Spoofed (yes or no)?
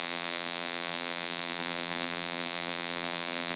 yes